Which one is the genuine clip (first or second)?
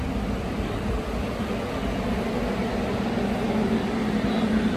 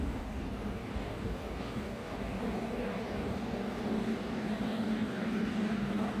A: first